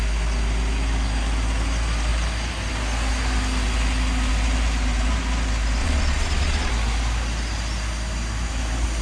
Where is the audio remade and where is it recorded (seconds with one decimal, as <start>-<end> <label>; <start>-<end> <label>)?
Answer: 0.0-5.8 recorded; 5.8-6.7 remade; 6.7-9.0 recorded